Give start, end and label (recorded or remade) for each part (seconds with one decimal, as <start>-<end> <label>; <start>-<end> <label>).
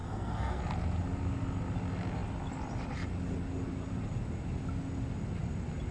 0.0-0.6 remade; 0.6-5.9 recorded